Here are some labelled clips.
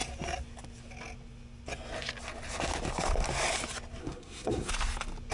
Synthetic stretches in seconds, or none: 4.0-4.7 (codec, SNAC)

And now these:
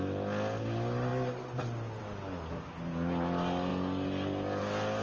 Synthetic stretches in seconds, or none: none

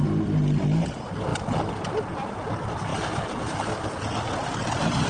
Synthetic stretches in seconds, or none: none

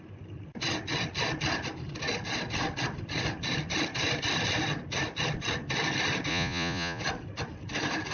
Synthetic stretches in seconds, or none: 6.3-7.0 (vocoder, Vocos)

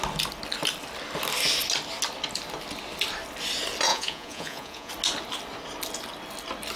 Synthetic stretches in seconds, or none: 3.9-4.9 (vocoder, Vocos)

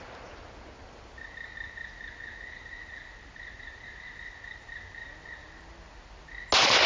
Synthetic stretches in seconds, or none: none

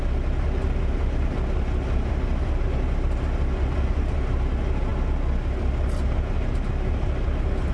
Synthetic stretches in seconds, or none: none